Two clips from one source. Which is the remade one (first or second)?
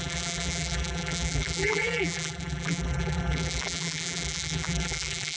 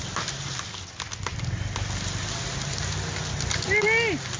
first